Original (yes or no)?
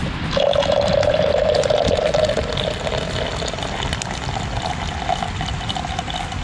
yes